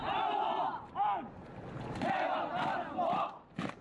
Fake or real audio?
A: real